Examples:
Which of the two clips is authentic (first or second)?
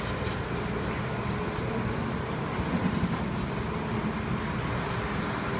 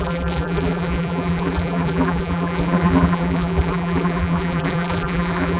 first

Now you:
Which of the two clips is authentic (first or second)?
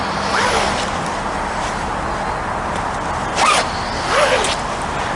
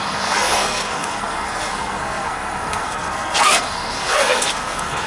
first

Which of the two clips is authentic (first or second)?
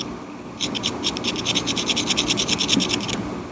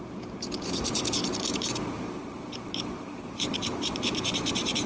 first